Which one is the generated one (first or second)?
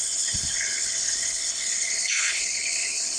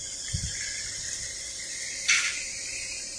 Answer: first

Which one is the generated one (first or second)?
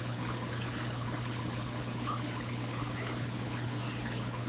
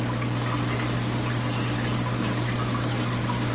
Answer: first